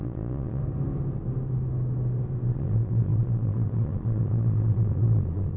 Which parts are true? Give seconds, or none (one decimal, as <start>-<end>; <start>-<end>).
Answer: 0.6-2.5